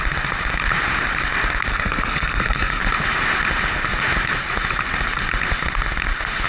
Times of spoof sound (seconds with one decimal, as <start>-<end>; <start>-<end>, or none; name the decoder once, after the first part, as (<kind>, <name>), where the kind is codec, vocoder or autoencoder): 1.7-2.8 (codec, SNAC)